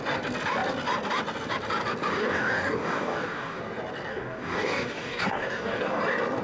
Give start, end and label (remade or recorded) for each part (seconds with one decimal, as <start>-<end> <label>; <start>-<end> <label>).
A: 0.0-2.1 recorded; 2.1-3.6 remade; 3.6-4.1 recorded; 4.1-6.0 remade; 6.0-6.4 recorded